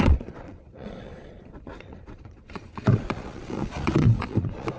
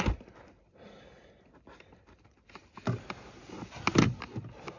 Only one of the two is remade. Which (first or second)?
first